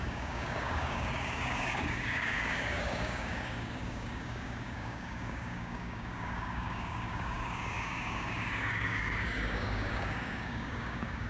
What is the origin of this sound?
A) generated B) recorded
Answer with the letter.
A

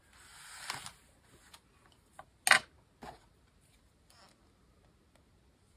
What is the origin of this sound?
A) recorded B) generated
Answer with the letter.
A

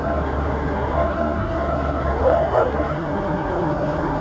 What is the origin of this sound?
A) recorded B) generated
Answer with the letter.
B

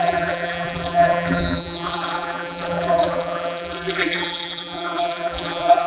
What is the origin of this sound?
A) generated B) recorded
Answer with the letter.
A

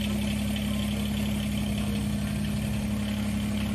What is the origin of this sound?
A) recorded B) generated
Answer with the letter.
A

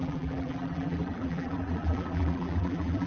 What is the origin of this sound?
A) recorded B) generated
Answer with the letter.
B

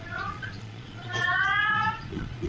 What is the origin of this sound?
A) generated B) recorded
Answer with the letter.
A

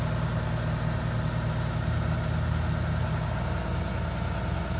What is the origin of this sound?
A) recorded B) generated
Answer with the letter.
A